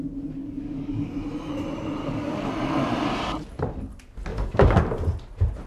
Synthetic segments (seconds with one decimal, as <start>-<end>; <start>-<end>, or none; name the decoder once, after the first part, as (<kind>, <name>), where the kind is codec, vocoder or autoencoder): 0.4-1.1 (codec, DAC); 2.0-2.5; 4.3-4.8